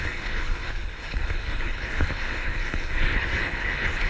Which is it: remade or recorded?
remade